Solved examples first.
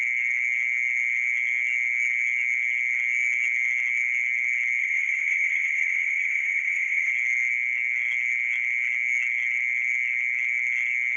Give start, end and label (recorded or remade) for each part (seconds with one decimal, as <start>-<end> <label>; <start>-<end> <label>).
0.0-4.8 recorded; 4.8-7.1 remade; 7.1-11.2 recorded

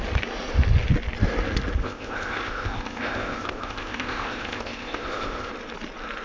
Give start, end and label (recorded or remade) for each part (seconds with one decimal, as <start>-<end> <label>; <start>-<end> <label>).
0.0-1.8 recorded; 1.8-5.5 remade; 5.5-6.2 recorded

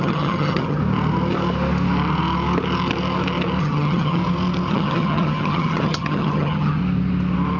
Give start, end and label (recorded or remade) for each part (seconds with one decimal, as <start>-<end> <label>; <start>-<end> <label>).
0.0-0.8 remade; 0.8-3.6 recorded; 3.6-4.2 remade; 4.2-4.7 recorded; 4.7-6.8 remade; 6.8-7.6 recorded